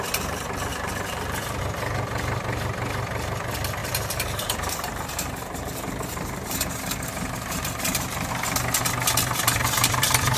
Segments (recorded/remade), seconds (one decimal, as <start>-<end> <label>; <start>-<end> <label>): 0.0-0.7 recorded; 0.7-1.6 remade; 1.6-3.8 recorded; 3.8-8.3 remade; 8.3-9.6 recorded; 9.6-10.4 remade